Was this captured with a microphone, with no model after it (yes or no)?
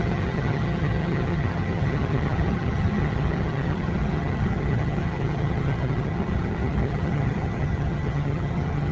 no